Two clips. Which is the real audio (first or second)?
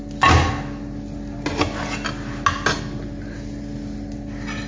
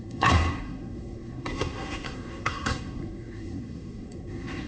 first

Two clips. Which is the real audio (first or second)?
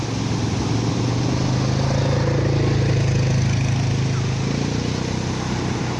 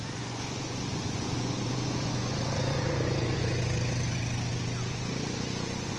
first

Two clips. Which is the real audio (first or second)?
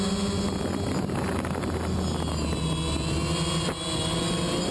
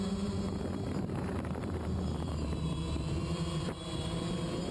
first